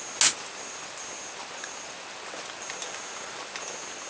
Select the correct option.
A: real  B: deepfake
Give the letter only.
A